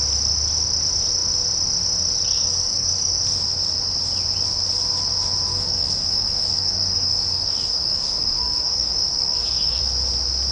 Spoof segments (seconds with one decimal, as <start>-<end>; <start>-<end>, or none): 2.3-3.2; 5.5-9.8